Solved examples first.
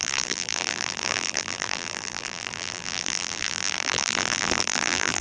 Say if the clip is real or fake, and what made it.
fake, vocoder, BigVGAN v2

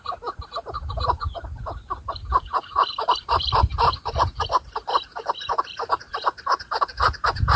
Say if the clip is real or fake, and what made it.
fake, vocoder, BigVGAN v2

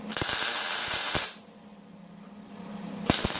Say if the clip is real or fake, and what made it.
fake, vocoder, BigVGAN v2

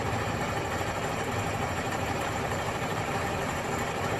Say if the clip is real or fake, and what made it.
fake, vocoder, BigVGAN v2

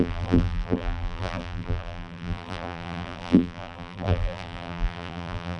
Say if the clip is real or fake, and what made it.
fake, vocoder, BigVGAN v2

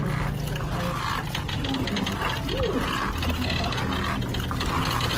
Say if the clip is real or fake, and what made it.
real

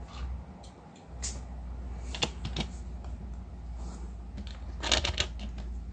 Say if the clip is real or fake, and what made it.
real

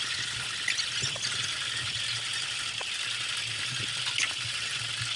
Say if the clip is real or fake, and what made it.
real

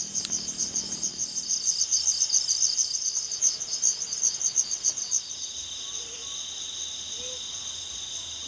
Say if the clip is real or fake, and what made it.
real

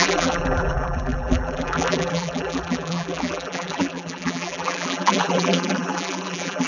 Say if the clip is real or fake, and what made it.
fake, vocoder, BigVGAN v2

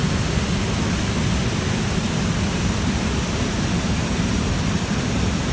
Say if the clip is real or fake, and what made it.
real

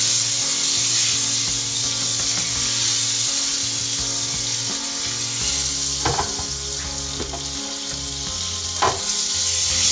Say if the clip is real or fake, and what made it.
real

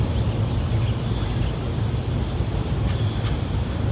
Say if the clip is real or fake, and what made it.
real